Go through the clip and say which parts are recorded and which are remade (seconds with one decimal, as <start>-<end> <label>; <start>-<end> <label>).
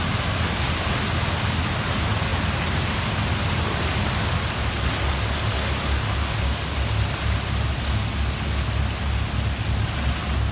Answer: 0.0-10.5 recorded